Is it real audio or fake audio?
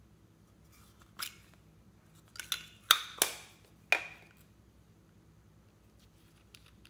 real